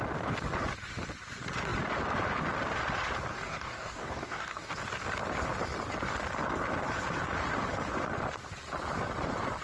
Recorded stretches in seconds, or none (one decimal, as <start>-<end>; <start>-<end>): 0.0-3.3; 4.7-9.6